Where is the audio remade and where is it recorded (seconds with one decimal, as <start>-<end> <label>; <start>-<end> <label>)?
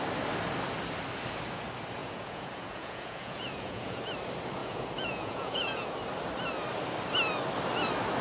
0.0-2.0 recorded; 2.0-4.0 remade; 4.0-4.6 recorded; 4.6-5.9 remade; 5.9-8.2 recorded